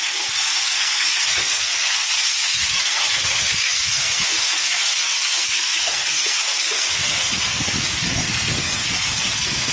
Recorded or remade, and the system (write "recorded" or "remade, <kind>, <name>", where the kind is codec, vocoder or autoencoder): remade, codec, SNAC